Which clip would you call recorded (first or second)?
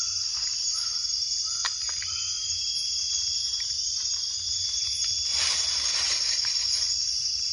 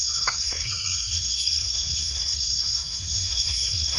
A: first